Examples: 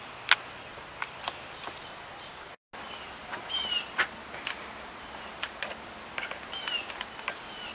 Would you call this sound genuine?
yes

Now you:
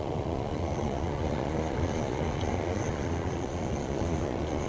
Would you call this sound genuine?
no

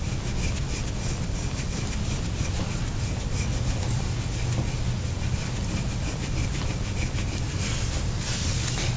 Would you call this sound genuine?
yes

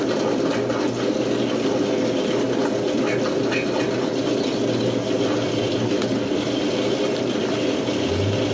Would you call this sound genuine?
yes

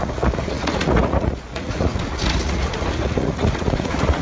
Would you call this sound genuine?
no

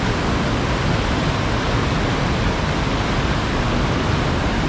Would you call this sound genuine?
yes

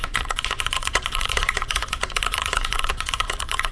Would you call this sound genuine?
no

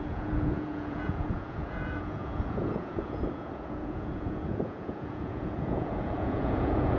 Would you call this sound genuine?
no